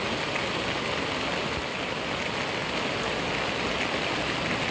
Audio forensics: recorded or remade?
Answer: recorded